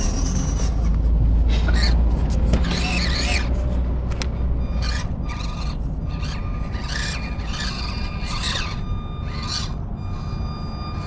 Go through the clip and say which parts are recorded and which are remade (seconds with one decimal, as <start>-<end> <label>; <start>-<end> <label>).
0.0-11.1 recorded